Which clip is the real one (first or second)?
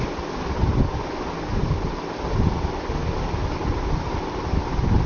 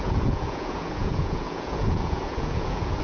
first